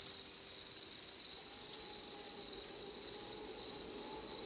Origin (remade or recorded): recorded